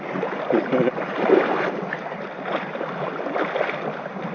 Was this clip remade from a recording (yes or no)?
no